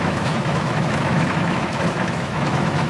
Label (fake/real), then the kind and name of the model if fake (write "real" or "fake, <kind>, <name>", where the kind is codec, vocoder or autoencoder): fake, autoencoder, DAC-VAE